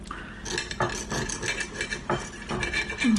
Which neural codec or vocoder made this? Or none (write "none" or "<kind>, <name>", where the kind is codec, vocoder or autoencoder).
none